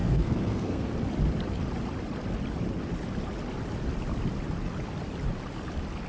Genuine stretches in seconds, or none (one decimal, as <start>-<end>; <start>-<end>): 0.9-6.1